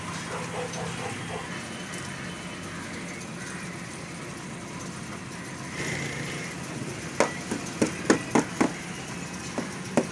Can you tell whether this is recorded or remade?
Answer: recorded